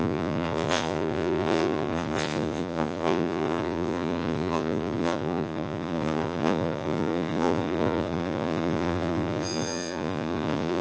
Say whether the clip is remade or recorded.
remade